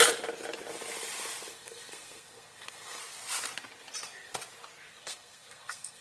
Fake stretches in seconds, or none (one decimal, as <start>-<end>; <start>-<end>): 1.5-3.0; 4.9-6.0